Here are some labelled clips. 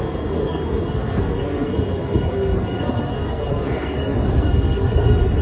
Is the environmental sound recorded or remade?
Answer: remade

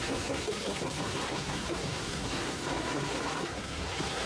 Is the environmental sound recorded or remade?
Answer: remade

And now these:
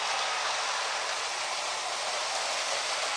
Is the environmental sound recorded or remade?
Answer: recorded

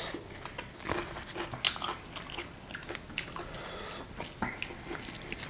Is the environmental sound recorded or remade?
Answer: recorded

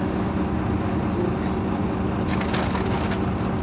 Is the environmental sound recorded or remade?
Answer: recorded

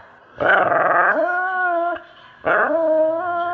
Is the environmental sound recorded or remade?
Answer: recorded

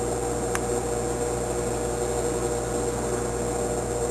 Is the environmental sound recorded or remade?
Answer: recorded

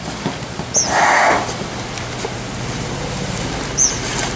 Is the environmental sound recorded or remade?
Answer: recorded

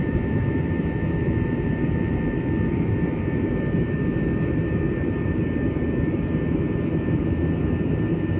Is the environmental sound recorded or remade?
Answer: remade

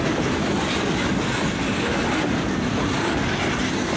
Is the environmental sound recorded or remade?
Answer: recorded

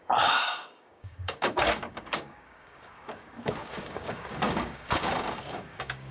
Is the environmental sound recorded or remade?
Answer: remade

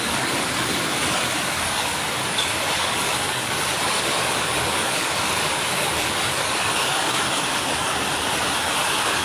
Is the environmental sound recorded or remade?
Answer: remade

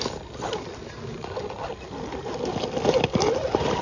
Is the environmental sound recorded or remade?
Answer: recorded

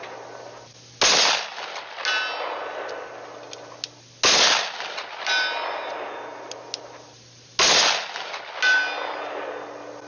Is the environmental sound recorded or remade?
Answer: recorded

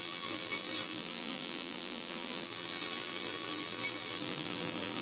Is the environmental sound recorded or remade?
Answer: remade